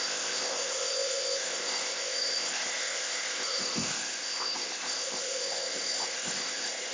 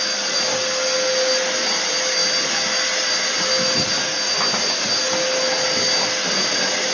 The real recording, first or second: second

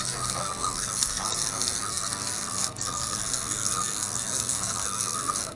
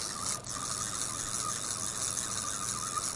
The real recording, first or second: second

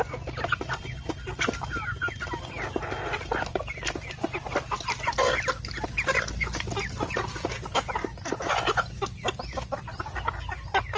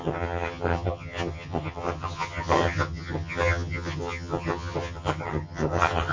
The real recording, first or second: first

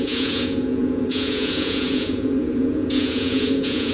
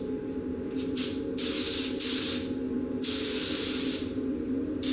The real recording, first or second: second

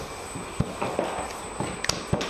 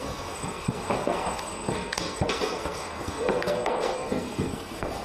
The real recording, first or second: first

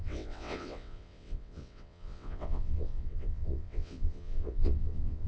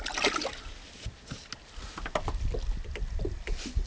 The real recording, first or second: second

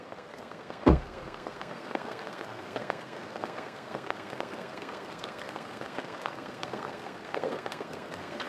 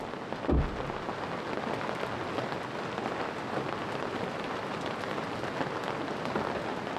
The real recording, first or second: second